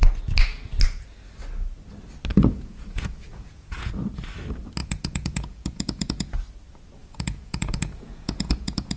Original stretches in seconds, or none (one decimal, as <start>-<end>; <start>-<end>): 0.0-2.3; 3.9-4.8; 6.4-7.0